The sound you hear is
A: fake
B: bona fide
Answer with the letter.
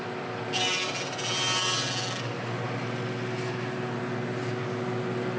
B